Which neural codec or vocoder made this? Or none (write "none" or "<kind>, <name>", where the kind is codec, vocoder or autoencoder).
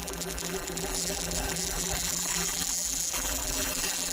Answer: vocoder, BigVGAN v2